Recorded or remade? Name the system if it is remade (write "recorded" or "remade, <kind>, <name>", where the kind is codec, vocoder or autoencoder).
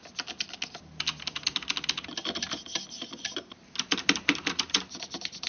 recorded